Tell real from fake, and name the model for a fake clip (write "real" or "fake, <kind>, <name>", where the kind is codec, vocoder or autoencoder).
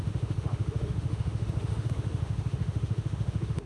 fake, autoencoder, DAC-VAE